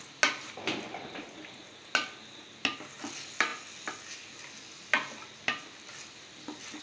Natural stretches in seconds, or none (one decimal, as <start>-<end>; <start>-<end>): 0.0-6.8